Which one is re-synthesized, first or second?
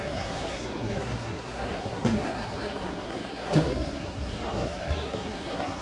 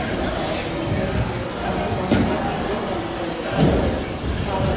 first